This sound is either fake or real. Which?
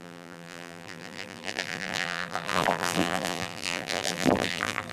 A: fake